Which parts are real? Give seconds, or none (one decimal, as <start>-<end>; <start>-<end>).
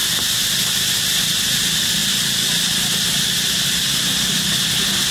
0.0-5.1